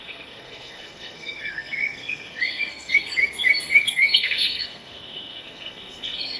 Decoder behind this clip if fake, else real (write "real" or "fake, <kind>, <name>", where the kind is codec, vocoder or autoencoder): fake, codec, SNAC